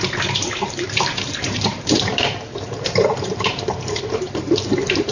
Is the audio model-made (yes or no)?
yes